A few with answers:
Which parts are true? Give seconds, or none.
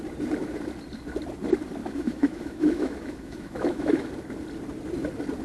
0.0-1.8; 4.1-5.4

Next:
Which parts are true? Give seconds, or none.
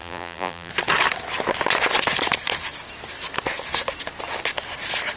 0.7-5.2